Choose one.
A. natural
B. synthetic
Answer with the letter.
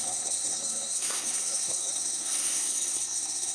B